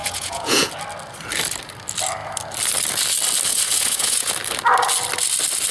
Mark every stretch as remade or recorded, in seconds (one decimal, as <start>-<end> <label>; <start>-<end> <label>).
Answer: 0.0-0.7 remade; 0.7-3.5 recorded; 3.5-4.3 remade; 4.3-5.7 recorded